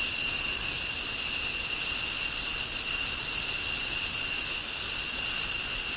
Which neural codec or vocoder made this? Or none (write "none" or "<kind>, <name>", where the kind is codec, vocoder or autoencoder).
none